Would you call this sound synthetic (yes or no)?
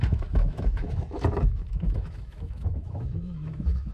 yes